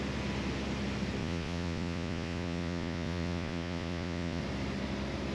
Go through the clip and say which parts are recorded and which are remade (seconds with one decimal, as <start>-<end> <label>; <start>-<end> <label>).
0.0-1.2 recorded; 1.2-4.4 remade; 4.4-5.3 recorded